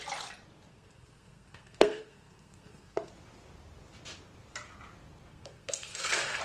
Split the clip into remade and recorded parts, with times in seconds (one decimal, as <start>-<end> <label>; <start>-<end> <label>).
0.0-0.7 recorded; 0.7-3.1 remade; 3.1-5.3 recorded; 5.3-6.4 remade